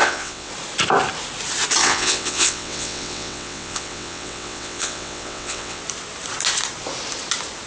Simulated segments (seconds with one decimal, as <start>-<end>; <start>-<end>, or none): 0.0-0.5; 1.8-5.8